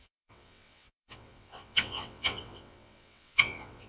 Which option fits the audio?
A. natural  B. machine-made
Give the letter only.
B